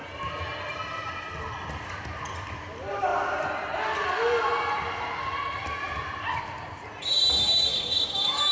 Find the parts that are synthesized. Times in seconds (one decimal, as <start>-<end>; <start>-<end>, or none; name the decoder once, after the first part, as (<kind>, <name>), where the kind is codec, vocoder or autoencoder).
7.7-8.5 (codec, DAC)